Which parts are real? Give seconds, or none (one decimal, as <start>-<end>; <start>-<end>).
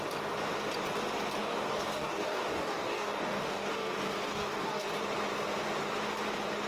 0.0-1.4; 4.9-6.7